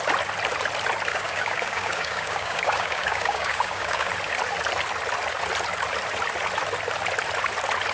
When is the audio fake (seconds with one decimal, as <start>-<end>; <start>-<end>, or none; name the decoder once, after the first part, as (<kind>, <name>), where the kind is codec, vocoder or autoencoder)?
1.1-4.1 (codec, DAC)